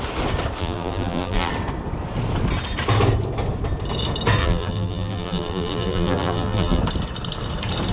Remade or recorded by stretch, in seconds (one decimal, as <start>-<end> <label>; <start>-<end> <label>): 0.0-0.6 recorded; 0.6-1.5 remade; 1.5-4.4 recorded; 4.4-6.8 remade; 6.8-7.9 recorded